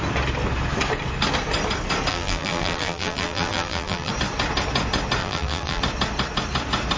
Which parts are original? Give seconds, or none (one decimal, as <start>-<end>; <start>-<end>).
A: 0.0-2.1; 4.1-5.2; 5.8-7.0